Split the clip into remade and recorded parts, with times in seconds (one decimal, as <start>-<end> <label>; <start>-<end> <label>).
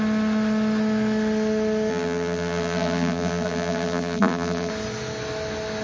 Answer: 0.0-1.9 recorded; 1.9-4.7 remade; 4.7-5.8 recorded